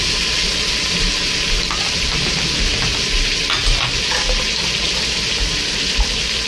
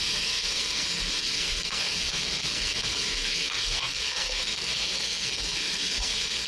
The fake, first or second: second